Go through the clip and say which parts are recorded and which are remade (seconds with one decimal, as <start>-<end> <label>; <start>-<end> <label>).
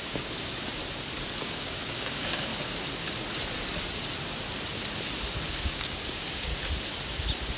0.0-0.8 remade; 0.8-1.4 recorded; 1.4-2.5 remade; 2.5-5.5 recorded; 5.5-6.5 remade; 6.5-7.6 recorded